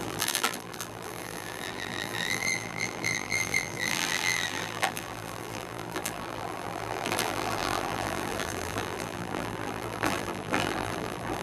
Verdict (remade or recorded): remade